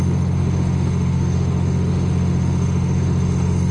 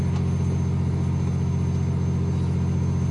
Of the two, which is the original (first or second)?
second